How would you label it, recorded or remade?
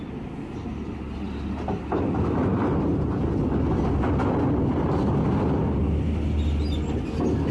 recorded